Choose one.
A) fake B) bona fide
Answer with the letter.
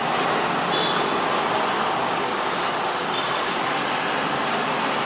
B